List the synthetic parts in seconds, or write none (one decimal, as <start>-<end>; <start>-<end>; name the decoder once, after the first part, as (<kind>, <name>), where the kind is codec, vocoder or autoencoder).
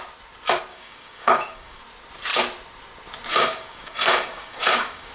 0.7-1.8 (codec, DAC); 3.3-5.1